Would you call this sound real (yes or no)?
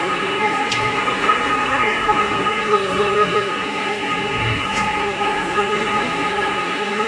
no